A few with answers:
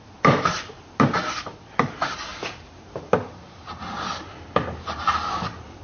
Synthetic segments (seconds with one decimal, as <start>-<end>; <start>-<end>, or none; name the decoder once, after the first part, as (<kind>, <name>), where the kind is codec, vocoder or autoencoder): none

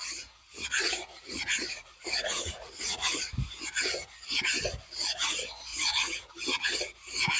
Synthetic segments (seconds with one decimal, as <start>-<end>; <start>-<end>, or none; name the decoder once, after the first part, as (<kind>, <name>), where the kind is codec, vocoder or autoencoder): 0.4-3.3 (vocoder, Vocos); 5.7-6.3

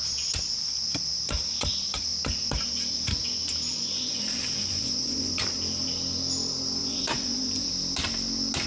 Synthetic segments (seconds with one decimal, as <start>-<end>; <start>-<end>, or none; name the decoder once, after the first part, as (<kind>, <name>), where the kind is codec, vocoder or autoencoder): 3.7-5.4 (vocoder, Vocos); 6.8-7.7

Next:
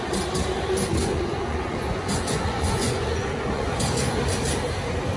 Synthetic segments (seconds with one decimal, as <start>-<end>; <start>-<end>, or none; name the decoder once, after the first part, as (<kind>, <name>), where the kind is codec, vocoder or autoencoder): 1.1-4.2 (vocoder, Vocos)